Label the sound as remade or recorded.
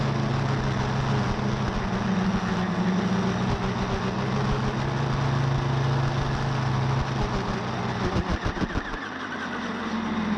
recorded